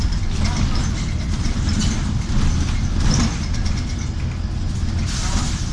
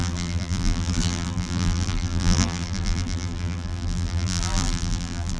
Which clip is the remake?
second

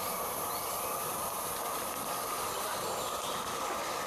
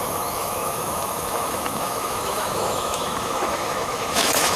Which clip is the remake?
second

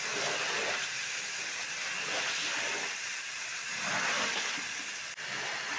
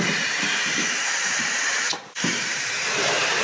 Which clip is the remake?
second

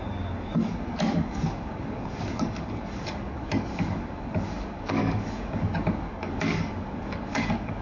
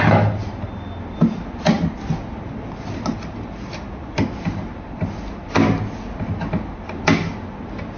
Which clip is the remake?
first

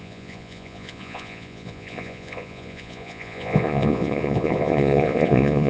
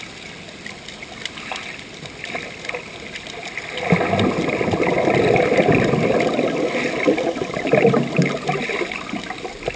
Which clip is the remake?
first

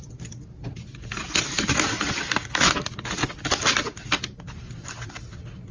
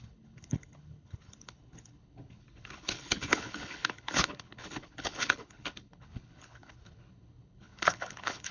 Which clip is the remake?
second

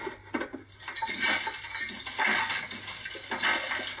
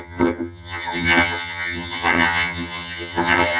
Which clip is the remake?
second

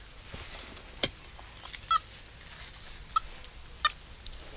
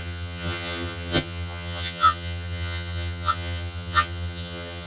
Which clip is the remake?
second